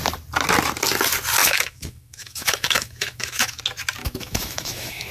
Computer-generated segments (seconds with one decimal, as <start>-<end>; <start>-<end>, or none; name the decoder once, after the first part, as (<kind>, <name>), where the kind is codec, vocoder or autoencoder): 1.4-3.6 (autoencoder, DAC-VAE); 4.0-5.1